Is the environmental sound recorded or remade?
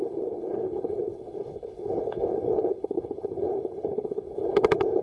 remade